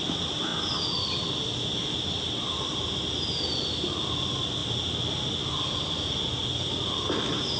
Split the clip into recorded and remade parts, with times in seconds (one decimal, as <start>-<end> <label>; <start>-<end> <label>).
0.0-7.6 recorded